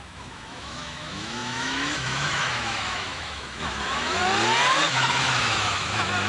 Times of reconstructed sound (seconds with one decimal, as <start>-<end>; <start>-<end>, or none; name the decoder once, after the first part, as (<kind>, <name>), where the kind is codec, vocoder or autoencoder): 0.0-4.2 (autoencoder, DAC-VAE); 4.9-6.3